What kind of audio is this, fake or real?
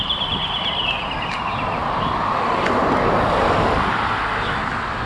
real